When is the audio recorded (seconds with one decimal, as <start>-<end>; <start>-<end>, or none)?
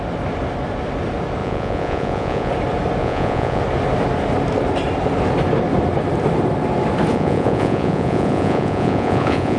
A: 0.0-1.4; 2.5-3.0; 3.6-7.1